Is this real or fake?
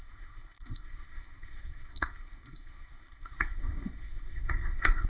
fake